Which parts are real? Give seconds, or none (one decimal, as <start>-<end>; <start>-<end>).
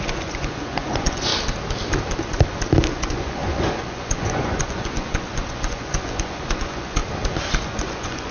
1.3-2.9; 7.0-7.6